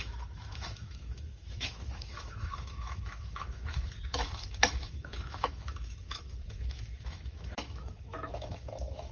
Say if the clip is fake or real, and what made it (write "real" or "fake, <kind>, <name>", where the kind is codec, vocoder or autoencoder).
fake, autoencoder, DAC-VAE